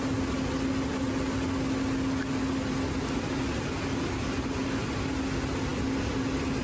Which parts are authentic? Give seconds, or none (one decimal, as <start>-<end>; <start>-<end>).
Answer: 0.0-6.6